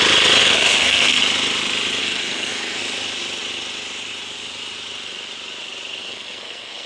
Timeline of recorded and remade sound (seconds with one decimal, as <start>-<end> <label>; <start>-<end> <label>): 0.0-0.4 recorded; 0.4-1.2 remade; 1.2-2.0 recorded; 2.0-2.8 remade; 2.8-6.0 recorded; 6.0-6.9 remade